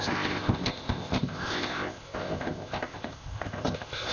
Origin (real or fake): fake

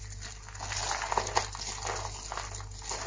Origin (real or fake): real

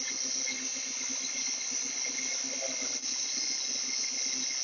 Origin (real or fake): real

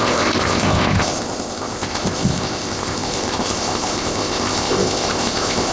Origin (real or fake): fake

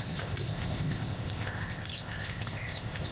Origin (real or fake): fake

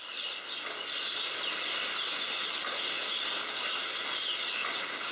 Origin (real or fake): real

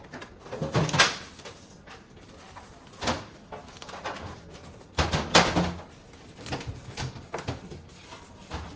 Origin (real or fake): real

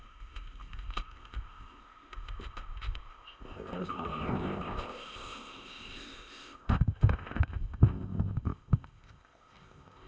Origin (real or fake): fake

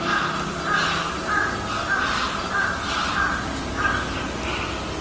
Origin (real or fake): real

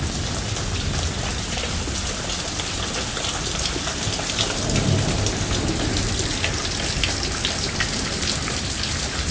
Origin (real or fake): real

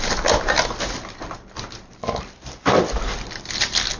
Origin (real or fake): real